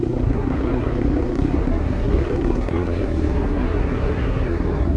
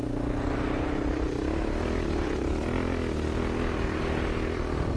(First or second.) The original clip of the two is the second